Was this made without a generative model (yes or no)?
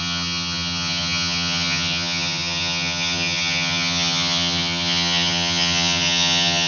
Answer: no